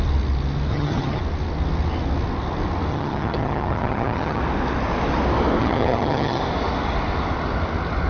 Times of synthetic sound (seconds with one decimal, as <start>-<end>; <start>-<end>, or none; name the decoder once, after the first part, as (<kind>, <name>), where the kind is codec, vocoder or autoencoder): 0.7-1.2 (vocoder, HiFi-GAN); 2.9-4.4; 5.6-6.4